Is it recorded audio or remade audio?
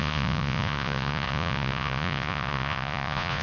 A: remade